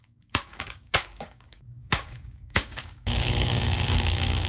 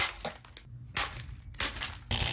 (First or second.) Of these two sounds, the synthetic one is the first